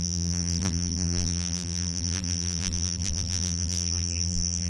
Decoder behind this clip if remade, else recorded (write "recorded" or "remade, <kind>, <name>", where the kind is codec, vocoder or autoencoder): remade, vocoder, BigVGAN v2